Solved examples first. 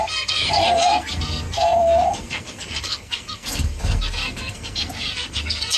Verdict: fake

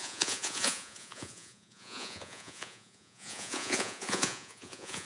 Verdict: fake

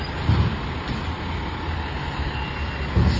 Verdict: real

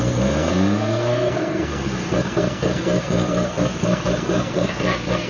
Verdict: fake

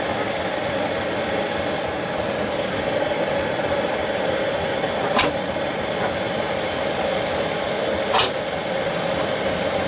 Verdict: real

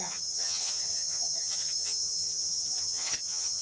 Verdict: fake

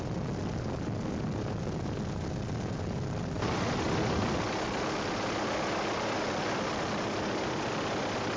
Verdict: real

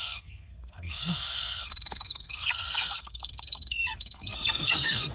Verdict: fake